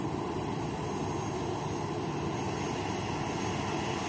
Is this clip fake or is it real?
real